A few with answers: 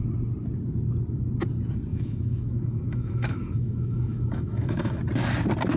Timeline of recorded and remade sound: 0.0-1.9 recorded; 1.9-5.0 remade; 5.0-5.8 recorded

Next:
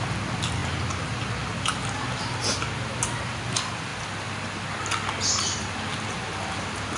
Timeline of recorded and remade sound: 0.0-7.0 recorded

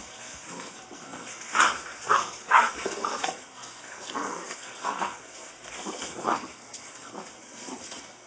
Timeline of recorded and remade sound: 0.0-8.3 remade

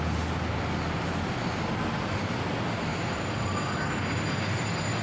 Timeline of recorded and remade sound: 0.0-5.0 recorded

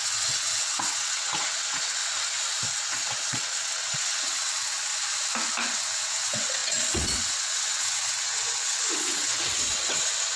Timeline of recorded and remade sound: 0.0-2.0 remade; 2.0-2.9 recorded; 2.9-4.9 remade; 4.9-5.7 recorded; 5.7-10.4 remade

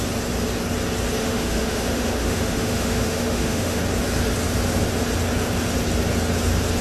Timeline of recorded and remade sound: 0.0-1.2 recorded; 1.2-3.8 remade; 3.8-6.8 recorded